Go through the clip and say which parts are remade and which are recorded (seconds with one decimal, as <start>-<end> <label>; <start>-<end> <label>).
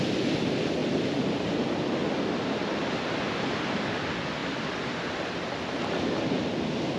0.0-0.8 recorded; 0.8-1.5 remade; 1.5-4.4 recorded; 4.4-6.5 remade; 6.5-7.0 recorded